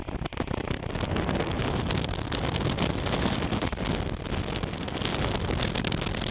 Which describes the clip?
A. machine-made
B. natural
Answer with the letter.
B